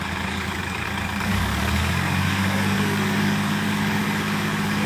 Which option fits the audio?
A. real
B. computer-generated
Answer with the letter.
B